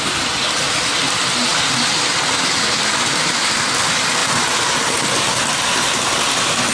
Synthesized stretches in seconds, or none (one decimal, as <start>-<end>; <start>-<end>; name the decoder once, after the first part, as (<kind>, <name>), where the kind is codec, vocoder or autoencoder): none